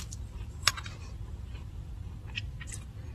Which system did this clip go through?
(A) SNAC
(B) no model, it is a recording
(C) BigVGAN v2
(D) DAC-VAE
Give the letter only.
B